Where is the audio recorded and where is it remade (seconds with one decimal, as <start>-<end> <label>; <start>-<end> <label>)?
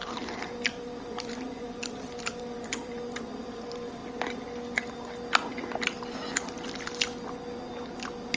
0.0-4.0 remade; 4.0-8.4 recorded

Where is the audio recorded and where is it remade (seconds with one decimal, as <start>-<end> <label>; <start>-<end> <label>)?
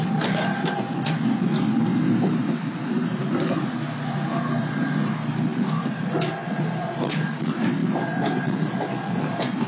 0.0-9.7 recorded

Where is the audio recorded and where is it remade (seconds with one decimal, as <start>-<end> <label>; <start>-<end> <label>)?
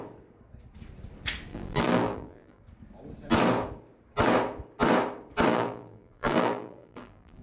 0.0-1.5 recorded; 1.5-2.6 remade; 2.6-5.5 recorded; 5.5-7.4 remade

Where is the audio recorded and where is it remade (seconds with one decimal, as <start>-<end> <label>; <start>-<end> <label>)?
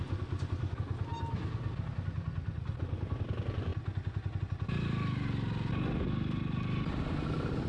0.0-7.7 recorded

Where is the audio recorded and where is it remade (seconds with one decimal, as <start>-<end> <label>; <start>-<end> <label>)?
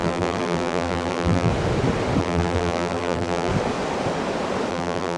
0.0-1.5 remade; 1.5-2.2 recorded; 2.2-3.5 remade; 3.5-4.7 recorded; 4.7-5.2 remade